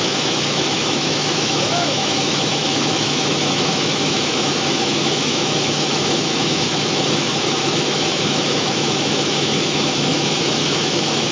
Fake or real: fake